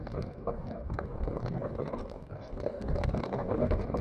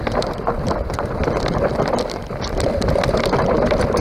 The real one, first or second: second